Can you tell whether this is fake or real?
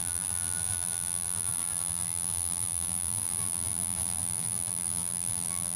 fake